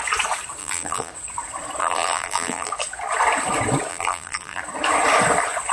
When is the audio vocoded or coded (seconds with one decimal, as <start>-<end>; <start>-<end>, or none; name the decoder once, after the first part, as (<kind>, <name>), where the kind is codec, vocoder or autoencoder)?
0.6-1.1 (vocoder, BigVGAN v2); 1.8-2.7; 3.9-4.6